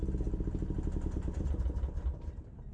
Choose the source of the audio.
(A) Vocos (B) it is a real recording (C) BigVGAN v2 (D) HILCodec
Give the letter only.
B